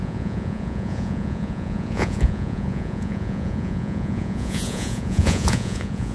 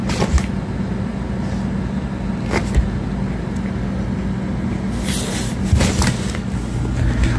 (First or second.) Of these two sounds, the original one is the second